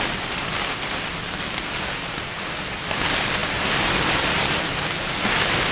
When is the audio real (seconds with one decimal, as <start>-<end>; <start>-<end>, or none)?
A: 0.0-5.7